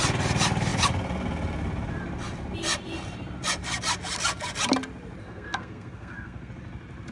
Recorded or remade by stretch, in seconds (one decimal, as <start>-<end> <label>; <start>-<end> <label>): 0.0-5.2 recorded; 5.2-6.5 remade; 6.5-7.1 recorded

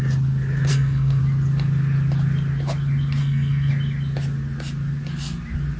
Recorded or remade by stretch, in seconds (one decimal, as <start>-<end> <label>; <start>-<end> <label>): 0.0-0.7 recorded; 0.7-1.2 remade; 1.2-3.2 recorded; 3.2-3.7 remade; 3.7-5.8 recorded

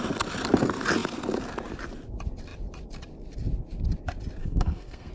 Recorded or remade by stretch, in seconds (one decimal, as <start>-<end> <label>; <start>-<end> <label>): 0.0-4.4 recorded; 4.4-5.1 remade

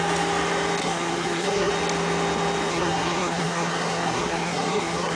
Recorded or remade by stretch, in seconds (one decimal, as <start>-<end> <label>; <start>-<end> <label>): 0.0-0.8 recorded; 0.8-1.7 remade; 1.7-2.7 recorded; 2.7-5.2 remade

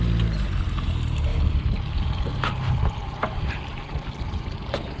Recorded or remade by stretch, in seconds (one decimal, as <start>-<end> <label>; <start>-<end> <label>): 0.0-5.0 recorded

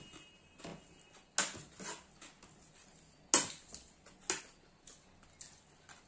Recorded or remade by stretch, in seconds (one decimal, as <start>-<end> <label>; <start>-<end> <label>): 0.0-6.1 recorded

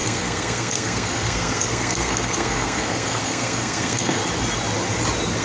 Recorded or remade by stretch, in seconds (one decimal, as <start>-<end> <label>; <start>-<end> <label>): 0.0-4.2 remade; 4.2-5.4 recorded

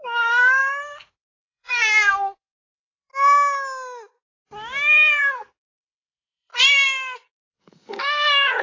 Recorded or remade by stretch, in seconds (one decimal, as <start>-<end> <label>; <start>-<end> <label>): 0.0-3.1 remade; 3.1-5.1 recorded; 5.1-8.6 remade